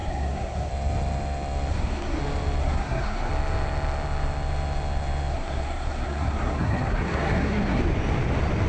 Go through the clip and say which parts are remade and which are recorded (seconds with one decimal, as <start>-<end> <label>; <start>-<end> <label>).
0.0-0.7 remade; 0.7-1.7 recorded; 1.7-2.2 remade; 2.2-2.6 recorded; 2.6-3.3 remade; 3.3-5.3 recorded; 5.3-7.8 remade; 7.8-8.7 recorded